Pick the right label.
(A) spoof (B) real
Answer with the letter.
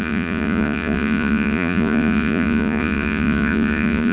A